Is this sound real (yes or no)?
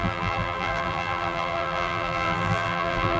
no